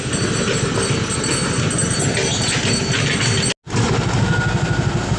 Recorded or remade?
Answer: recorded